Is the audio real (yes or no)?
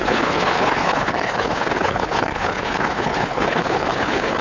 no